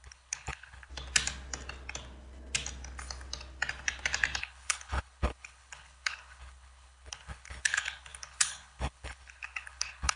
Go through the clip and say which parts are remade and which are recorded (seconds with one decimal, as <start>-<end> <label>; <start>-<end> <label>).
0.0-0.9 remade; 0.9-4.4 recorded; 4.4-10.2 remade